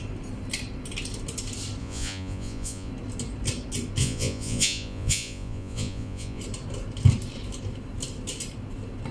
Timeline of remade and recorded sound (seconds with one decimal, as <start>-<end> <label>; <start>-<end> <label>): 0.0-1.8 recorded; 1.8-2.9 remade; 2.9-4.0 recorded; 4.0-6.4 remade; 6.4-9.1 recorded